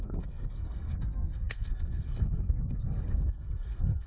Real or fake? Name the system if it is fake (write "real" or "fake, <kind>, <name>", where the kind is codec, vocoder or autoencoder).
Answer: fake, codec, SNAC